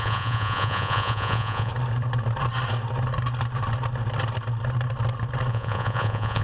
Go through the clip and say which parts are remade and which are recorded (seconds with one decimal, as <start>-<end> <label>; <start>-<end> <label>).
0.0-1.7 remade; 1.7-5.5 recorded; 5.5-6.4 remade